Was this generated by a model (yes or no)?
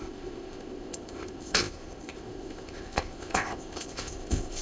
yes